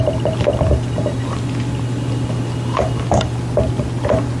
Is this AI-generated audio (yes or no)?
no